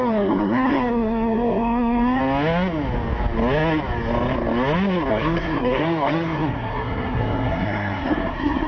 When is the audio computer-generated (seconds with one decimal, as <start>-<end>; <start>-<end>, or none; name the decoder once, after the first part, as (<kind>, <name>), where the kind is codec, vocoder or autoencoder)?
0.0-2.2 (codec, SNAC); 5.1-8.7